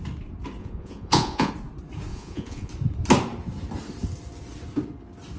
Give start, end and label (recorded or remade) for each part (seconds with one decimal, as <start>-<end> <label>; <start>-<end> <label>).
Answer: 0.0-0.6 recorded; 0.6-1.5 remade; 1.5-2.1 recorded; 2.1-2.7 remade; 2.7-5.4 recorded